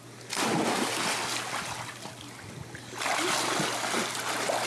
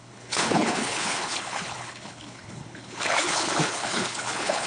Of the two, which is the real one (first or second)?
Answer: first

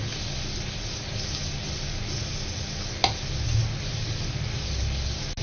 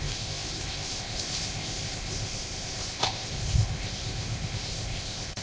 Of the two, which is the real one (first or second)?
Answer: first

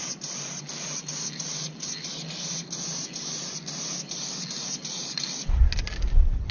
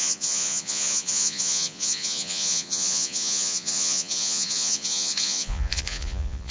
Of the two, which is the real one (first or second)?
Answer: first